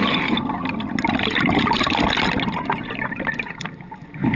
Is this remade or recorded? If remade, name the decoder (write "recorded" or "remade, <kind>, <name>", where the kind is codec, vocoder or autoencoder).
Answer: recorded